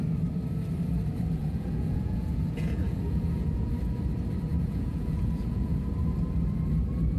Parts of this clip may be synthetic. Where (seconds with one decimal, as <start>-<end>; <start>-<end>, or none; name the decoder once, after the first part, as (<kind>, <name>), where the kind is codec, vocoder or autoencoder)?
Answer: 1.4-3.7 (vocoder, Vocos); 4.5-5.8